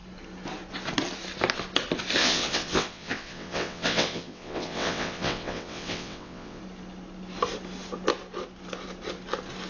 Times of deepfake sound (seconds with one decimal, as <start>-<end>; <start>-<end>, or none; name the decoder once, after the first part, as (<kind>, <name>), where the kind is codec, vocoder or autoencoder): 2.2-6.6 (vocoder, WaveNeXt)